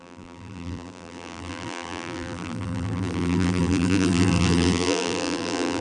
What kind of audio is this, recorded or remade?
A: remade